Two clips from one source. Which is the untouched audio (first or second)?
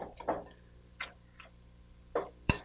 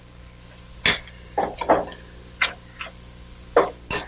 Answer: second